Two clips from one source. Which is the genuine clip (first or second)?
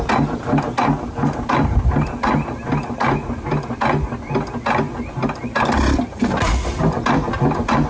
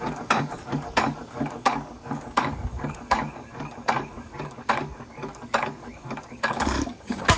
first